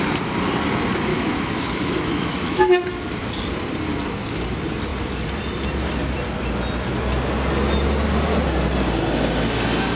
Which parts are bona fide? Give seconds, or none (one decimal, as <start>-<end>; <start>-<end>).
0.0-1.1; 2.8-10.0